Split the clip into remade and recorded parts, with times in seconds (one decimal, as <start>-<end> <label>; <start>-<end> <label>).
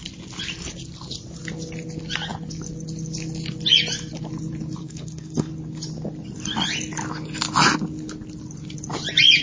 0.0-4.8 recorded; 4.8-5.5 remade; 5.5-9.4 recorded